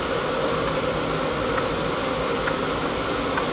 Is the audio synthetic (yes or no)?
no